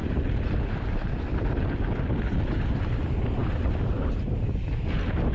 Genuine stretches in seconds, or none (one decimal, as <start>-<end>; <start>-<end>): 2.7-3.4; 4.1-5.3